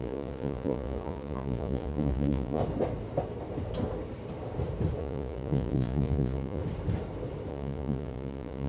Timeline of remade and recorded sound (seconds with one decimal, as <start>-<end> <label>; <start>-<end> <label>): 0.0-2.6 remade; 2.6-5.0 recorded; 5.0-6.6 remade; 6.6-7.5 recorded; 7.5-8.7 remade